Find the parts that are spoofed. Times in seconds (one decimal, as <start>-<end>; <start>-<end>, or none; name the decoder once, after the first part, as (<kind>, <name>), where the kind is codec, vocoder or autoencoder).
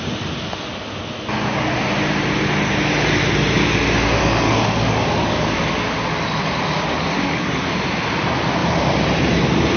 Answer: 4.2-5.6 (codec, DAC); 7.1-7.7